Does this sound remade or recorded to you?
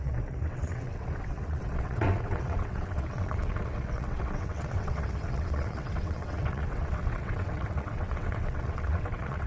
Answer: remade